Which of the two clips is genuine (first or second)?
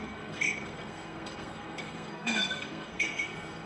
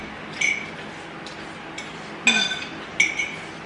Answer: second